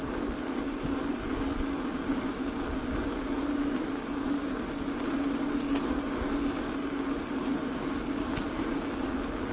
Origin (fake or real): real